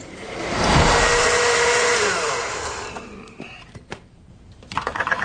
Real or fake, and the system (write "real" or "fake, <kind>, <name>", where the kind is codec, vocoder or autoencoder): fake, vocoder, BigVGAN v2